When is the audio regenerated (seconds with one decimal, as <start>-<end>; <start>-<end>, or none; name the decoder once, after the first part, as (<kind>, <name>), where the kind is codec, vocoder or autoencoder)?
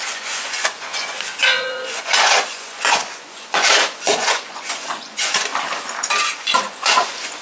0.0-5.5 (vocoder, Vocos); 6.2-7.4